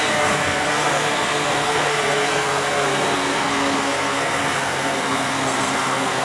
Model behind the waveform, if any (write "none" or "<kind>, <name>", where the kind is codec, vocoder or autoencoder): codec, SNAC